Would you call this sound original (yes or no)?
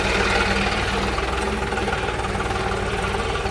yes